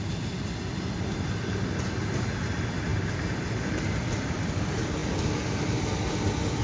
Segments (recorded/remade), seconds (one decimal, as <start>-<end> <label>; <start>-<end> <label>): 0.0-6.6 recorded